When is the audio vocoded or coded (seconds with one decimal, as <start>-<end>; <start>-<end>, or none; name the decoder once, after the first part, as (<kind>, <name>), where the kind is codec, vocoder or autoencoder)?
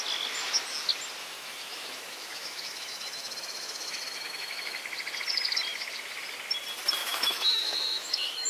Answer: 1.2-4.8 (autoencoder, DAC-VAE); 7.0-8.5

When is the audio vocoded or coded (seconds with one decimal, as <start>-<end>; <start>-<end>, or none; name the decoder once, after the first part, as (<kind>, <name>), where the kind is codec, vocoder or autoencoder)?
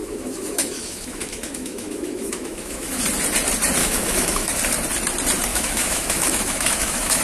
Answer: 0.0-3.0 (autoencoder, DAC-VAE); 3.8-4.6; 5.5-7.2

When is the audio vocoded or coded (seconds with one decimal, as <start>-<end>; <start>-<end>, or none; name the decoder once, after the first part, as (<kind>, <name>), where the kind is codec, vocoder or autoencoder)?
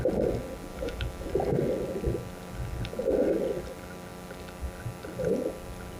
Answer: 0.7-1.3 (autoencoder, DAC-VAE)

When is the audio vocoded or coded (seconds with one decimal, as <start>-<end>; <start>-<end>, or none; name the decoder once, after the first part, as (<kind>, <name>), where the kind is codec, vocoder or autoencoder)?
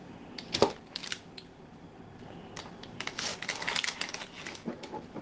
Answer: none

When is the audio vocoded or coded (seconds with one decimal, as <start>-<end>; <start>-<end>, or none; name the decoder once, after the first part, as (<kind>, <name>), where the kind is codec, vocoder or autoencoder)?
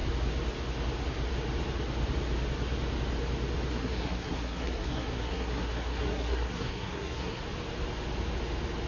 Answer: 3.7-7.4 (codec, SNAC)